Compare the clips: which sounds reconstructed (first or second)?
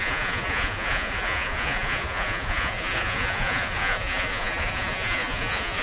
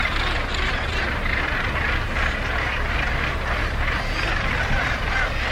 first